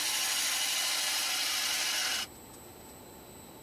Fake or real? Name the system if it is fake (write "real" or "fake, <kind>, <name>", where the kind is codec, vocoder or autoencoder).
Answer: real